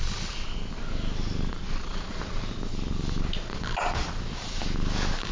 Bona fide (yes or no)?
yes